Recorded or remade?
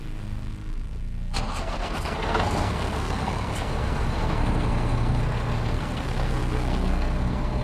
remade